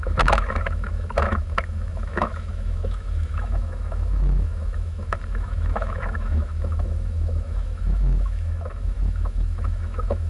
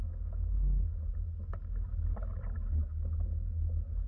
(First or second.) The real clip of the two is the second